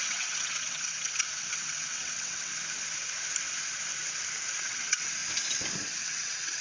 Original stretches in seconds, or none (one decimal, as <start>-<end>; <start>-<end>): 2.5-4.5; 5.2-6.0